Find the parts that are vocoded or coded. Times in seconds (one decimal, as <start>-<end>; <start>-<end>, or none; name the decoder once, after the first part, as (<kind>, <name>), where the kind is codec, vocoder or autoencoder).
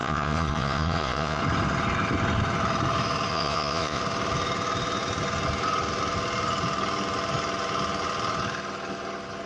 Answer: 0.0-1.4 (vocoder, Vocos); 3.3-4.0